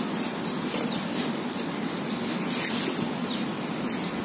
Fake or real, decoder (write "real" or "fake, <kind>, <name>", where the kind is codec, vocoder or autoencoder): real